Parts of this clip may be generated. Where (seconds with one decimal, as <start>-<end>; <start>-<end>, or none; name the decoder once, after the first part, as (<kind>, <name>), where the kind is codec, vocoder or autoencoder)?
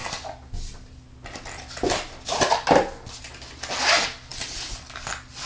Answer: none